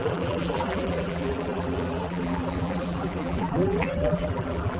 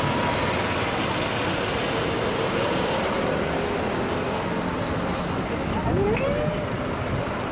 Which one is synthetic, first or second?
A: first